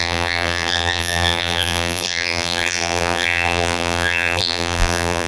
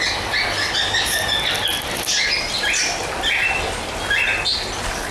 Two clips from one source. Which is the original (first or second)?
second